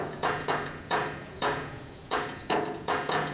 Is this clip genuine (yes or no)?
no